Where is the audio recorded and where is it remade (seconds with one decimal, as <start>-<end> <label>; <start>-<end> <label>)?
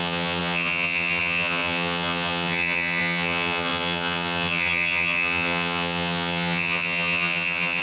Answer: 0.0-7.8 remade